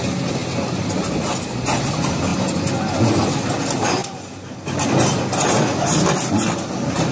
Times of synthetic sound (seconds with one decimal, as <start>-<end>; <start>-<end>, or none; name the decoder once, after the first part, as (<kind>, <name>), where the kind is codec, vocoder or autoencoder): none